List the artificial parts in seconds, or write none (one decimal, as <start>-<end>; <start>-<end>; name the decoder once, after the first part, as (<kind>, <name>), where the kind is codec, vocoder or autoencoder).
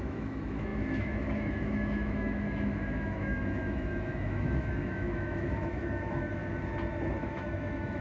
0.0-6.4 (autoencoder, DAC-VAE); 7.1-8.0